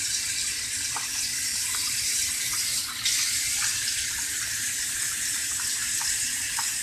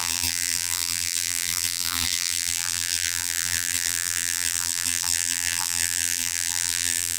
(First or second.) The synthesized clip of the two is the second